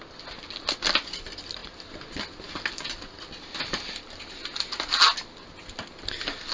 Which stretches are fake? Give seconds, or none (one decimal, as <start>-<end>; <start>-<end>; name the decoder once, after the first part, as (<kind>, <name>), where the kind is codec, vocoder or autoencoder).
none